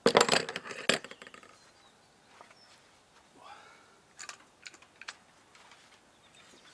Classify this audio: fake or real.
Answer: real